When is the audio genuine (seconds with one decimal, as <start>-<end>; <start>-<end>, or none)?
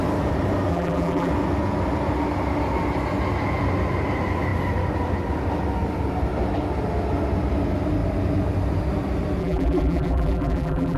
0.0-0.7; 1.3-9.4